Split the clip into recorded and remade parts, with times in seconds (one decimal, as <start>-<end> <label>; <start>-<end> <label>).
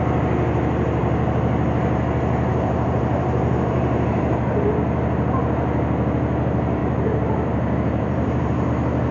0.0-2.5 recorded; 2.5-4.7 remade; 4.7-6.8 recorded; 6.8-8.7 remade; 8.7-9.1 recorded